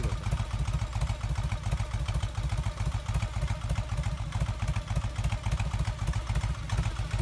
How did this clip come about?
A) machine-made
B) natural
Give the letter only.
B